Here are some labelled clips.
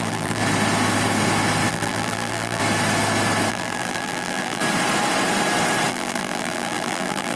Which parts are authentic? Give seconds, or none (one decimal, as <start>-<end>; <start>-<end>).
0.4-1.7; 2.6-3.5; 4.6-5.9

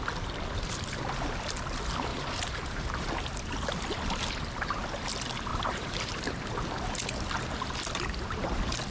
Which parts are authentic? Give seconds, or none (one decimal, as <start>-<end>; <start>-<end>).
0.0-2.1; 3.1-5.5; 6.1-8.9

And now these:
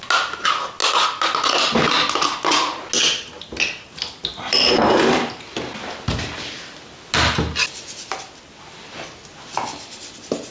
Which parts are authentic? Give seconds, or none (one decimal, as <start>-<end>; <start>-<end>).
0.0-4.2; 6.8-10.5

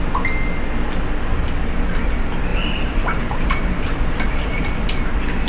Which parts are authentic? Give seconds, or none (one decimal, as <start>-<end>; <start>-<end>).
0.0-2.5; 4.7-5.5

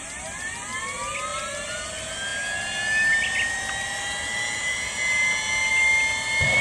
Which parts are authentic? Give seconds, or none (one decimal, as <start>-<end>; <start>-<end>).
0.0-1.3; 1.9-6.6